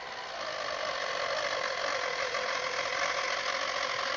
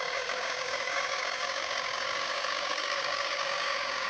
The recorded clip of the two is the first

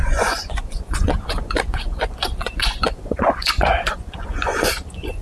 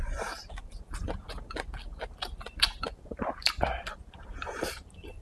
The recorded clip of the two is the second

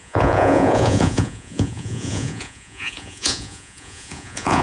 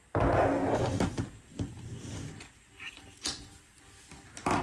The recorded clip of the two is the second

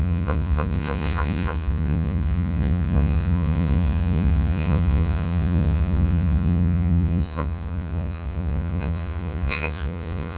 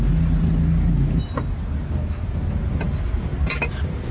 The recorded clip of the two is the second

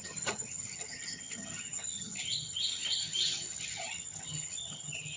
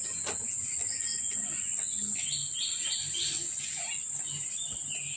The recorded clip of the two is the second